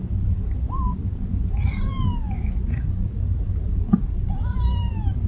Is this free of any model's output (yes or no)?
yes